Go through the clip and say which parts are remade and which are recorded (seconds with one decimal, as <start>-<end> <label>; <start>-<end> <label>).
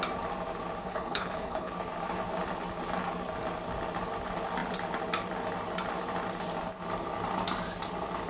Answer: 0.0-0.9 recorded; 0.9-1.7 remade; 1.7-8.3 recorded